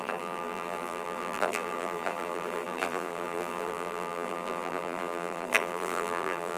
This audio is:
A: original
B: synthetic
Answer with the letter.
B